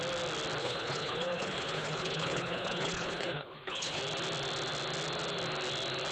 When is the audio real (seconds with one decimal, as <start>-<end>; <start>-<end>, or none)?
0.0-0.6; 4.0-6.1